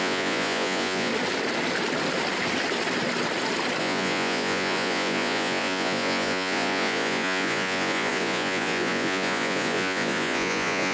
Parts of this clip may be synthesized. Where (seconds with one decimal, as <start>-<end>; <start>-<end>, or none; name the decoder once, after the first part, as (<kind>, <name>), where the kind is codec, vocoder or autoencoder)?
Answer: 0.0-1.1 (vocoder, Vocos); 3.8-10.9